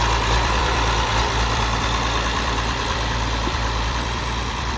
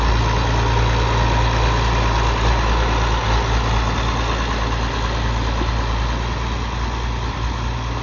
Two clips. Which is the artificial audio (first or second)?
first